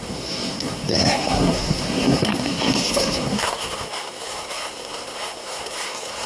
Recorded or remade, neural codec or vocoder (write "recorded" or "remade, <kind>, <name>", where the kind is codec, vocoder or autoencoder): remade, codec, SNAC